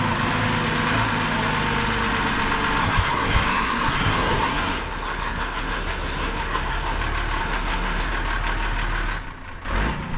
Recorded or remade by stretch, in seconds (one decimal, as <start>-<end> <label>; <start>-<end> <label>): 0.0-2.8 recorded; 2.8-7.0 remade; 7.0-7.4 recorded; 7.4-8.1 remade; 8.1-10.2 recorded